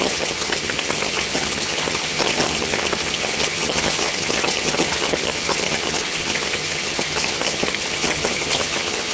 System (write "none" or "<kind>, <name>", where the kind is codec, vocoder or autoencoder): vocoder, HiFi-GAN